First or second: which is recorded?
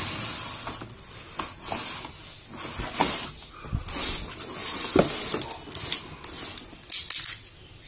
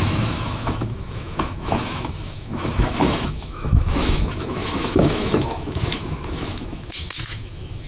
first